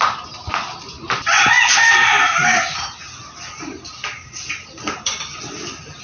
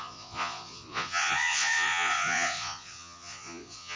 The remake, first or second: second